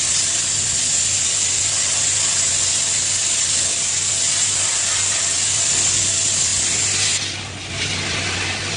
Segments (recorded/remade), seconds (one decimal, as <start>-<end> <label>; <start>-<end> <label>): 0.0-8.8 recorded